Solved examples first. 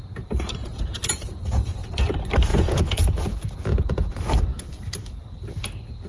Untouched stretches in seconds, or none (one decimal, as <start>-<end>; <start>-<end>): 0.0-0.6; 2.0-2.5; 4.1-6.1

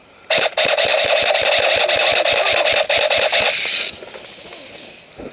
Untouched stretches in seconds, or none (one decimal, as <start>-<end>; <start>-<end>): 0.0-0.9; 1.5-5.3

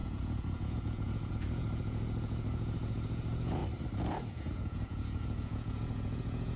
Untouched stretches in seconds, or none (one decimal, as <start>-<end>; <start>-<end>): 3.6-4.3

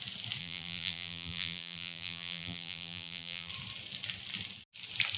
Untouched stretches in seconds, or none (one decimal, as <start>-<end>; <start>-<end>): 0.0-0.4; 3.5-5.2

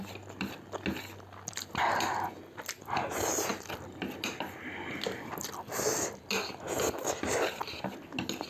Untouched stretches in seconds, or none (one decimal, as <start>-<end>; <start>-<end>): 0.0-8.5

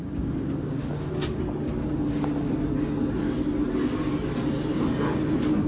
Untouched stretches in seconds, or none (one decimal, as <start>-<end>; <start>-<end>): 1.1-5.7

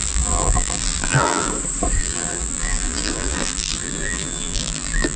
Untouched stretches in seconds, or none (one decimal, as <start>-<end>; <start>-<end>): 1.5-2.0